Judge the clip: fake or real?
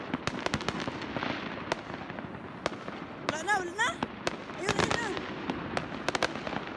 real